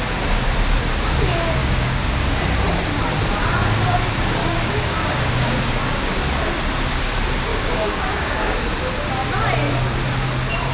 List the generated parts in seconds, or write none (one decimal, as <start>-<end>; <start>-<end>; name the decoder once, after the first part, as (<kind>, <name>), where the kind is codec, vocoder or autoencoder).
1.6-2.3 (codec, DAC); 4.4-6.2; 7.5-8.7